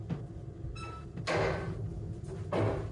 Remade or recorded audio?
recorded